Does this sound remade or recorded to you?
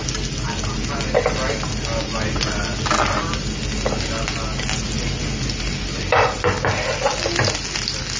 recorded